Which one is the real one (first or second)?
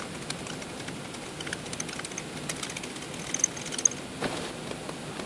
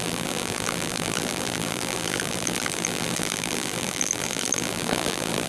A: first